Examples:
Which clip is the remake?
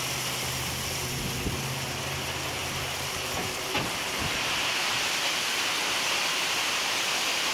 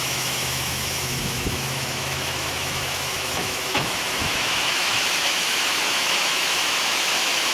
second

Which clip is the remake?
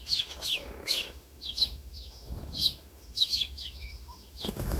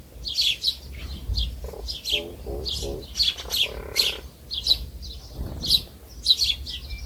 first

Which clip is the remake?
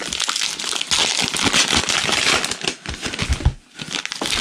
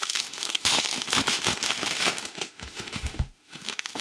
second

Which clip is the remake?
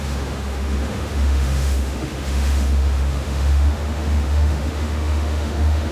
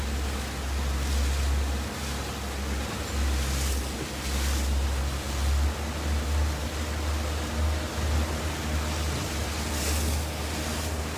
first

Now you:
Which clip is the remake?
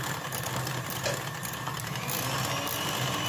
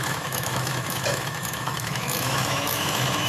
second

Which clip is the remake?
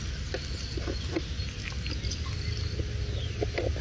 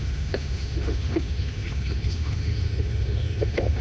second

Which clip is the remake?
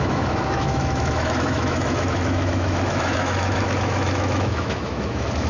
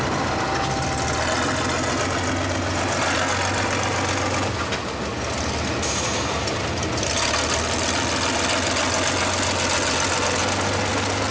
first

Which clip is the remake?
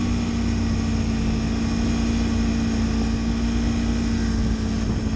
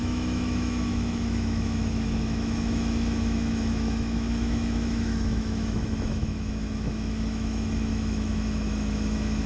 second